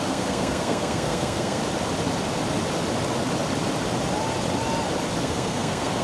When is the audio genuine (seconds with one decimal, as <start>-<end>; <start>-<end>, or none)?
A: 1.6-5.2

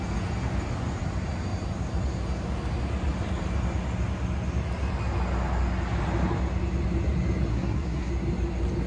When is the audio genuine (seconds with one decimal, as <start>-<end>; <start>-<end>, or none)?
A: 0.0-7.5; 8.1-8.9